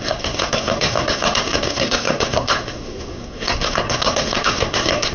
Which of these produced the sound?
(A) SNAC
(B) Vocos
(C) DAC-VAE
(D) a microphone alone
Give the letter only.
A